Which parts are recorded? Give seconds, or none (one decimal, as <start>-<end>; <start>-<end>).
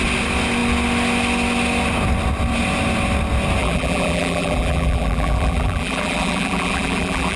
0.0-3.6